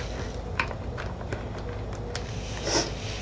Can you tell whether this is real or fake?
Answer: real